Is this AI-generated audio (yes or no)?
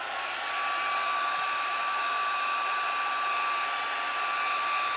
no